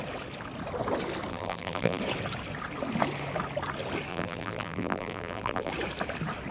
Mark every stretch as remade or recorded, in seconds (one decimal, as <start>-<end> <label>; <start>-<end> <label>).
0.0-1.3 recorded; 1.3-2.0 remade; 2.0-4.1 recorded; 4.1-5.7 remade; 5.7-6.5 recorded

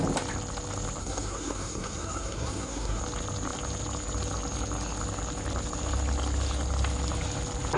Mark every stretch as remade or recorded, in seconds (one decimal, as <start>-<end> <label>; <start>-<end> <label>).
0.0-1.0 recorded; 1.0-3.0 remade; 3.0-7.8 recorded

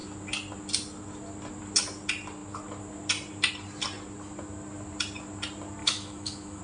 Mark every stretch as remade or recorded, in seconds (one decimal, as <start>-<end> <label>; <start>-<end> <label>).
0.0-5.8 recorded; 5.8-6.6 remade

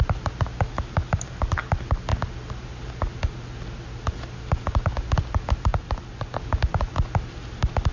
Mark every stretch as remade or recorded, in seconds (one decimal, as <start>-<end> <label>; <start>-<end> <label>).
0.0-7.9 recorded